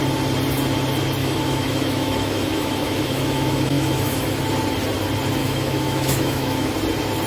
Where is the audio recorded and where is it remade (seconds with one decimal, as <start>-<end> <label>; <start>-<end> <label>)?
0.0-1.2 recorded; 1.2-4.4 remade; 4.4-5.4 recorded; 5.4-6.7 remade; 6.7-7.3 recorded